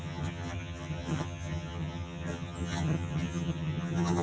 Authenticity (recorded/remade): remade